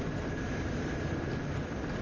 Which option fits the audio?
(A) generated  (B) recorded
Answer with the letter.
B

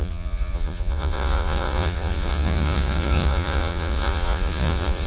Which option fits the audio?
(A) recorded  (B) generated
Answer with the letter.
B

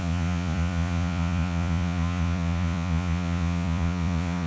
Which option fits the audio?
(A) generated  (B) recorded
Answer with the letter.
A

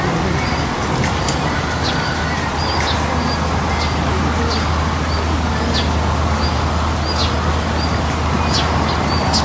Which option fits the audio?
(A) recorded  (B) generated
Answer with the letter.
A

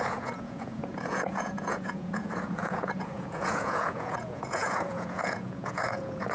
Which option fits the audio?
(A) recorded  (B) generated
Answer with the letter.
B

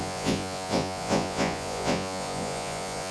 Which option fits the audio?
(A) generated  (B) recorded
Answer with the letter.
A